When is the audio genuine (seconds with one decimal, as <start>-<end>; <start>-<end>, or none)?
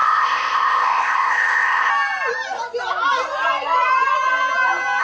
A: 1.9-5.0